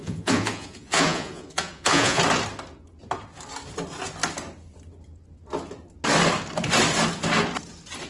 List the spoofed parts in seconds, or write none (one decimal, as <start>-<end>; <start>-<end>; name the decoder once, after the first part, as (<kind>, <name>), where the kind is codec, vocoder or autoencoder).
0.0-2.2 (vocoder, Vocos)